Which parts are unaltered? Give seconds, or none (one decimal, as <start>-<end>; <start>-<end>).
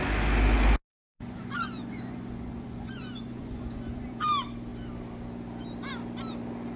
0.0-0.9; 4.3-6.8